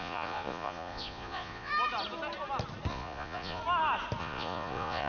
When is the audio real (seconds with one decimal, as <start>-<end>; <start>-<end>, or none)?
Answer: 1.7-2.9; 3.6-4.2